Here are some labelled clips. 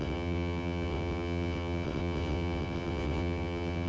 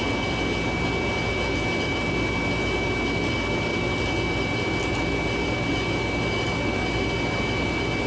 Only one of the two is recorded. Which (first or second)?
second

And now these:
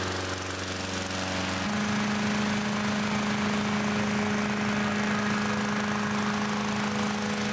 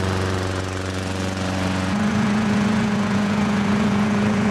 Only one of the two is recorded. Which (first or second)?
first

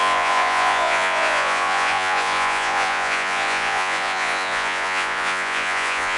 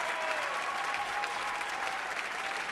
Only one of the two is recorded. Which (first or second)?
second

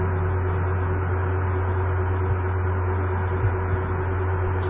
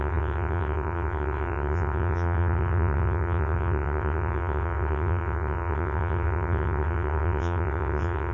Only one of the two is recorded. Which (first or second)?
first